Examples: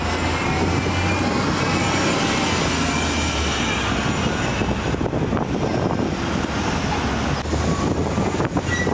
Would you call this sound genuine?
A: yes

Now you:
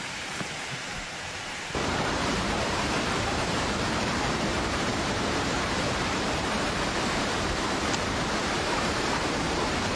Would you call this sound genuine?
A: no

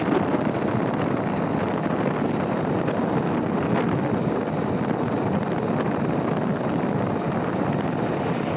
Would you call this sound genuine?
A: yes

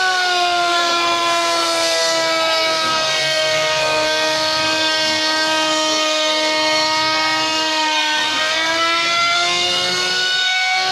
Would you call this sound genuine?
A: no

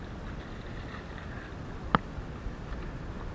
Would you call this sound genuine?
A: yes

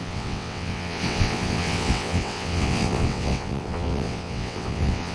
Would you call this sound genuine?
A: no